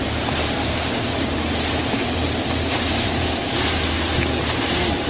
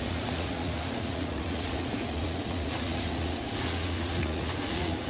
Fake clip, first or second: second